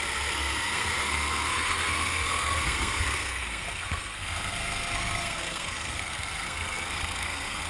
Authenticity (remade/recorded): remade